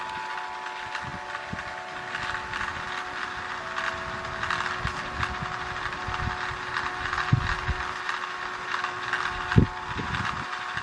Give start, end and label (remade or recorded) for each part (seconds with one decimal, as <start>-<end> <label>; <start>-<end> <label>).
0.0-10.8 recorded